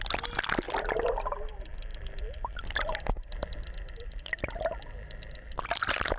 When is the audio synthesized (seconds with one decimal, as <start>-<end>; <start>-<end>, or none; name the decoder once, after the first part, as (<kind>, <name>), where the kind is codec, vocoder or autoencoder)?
none